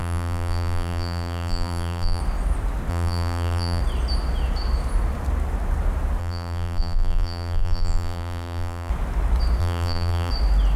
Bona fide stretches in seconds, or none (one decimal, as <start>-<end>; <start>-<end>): 2.2-2.9; 3.8-6.2; 8.9-9.6; 10.3-10.8